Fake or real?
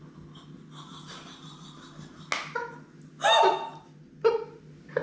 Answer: real